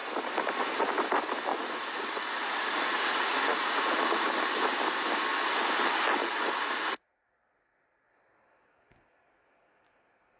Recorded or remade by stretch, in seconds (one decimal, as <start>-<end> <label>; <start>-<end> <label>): 0.0-1.5 recorded; 1.5-4.3 remade; 4.3-6.2 recorded; 6.2-6.9 remade; 6.9-10.4 recorded